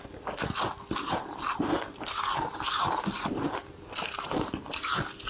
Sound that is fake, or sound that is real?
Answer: real